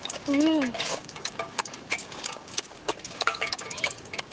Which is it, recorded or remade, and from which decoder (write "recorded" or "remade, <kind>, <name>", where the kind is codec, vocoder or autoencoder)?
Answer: remade, codec, DAC